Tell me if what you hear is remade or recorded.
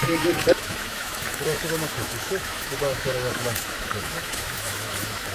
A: remade